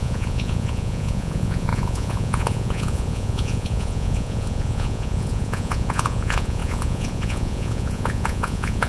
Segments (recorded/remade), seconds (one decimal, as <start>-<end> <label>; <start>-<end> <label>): 0.0-8.9 remade